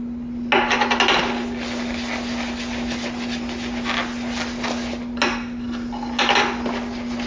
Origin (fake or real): real